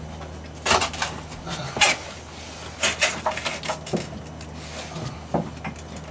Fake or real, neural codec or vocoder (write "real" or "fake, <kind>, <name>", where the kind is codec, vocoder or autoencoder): real